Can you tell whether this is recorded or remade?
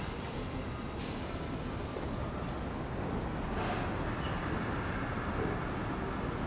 recorded